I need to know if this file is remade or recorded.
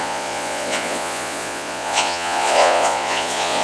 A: remade